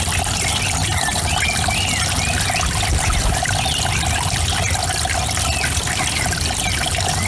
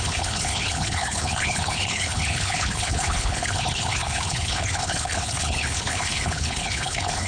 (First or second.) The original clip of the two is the first